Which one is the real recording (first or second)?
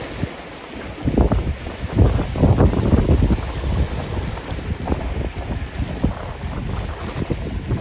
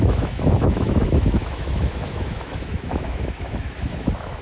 first